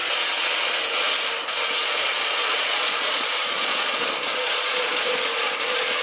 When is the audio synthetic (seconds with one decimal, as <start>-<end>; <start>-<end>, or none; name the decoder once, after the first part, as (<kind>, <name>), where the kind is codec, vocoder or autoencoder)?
1.8-5.1 (vocoder, Vocos)

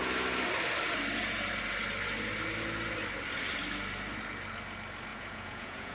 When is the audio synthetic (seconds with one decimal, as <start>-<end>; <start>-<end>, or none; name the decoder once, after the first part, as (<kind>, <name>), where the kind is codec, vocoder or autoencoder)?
5.1-5.9 (vocoder, Vocos)

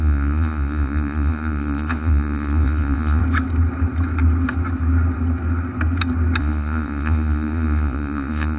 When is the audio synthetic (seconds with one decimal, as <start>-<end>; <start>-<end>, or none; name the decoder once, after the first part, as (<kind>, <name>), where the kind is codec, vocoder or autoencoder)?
0.0-3.2 (vocoder, Vocos); 6.4-8.6

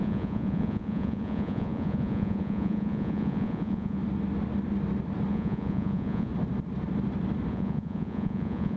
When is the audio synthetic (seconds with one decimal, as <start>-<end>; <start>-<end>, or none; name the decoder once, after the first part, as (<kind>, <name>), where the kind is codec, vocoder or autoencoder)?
0.0-4.0 (vocoder, Vocos); 5.3-6.3; 7.5-8.8

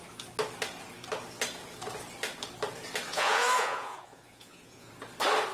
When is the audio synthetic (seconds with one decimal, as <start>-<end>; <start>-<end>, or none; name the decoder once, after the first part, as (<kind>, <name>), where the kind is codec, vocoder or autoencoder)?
3.1-4.9 (vocoder, Vocos)

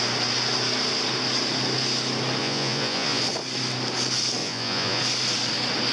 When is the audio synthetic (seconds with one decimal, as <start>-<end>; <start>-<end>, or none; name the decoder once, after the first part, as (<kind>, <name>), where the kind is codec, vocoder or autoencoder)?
2.4-3.2 (vocoder, Vocos); 4.4-5.0

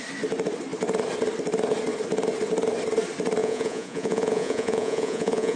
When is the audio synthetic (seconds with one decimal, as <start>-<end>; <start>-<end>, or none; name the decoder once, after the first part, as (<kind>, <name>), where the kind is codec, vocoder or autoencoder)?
3.4-5.6 (vocoder, Vocos)

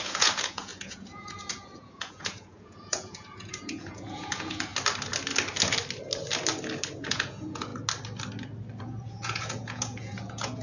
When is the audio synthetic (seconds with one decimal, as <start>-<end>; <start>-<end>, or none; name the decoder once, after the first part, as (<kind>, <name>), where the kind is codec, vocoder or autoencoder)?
0.0-4.7 (vocoder, Vocos); 7.0-7.7; 8.8-10.6